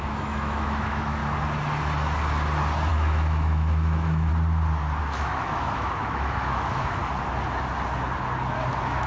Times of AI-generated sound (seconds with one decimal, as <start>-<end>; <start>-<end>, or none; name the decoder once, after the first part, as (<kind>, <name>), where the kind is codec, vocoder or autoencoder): 0.0-1.2 (autoencoder, DAC-VAE); 2.9-4.3; 5.0-7.0; 8.7-9.1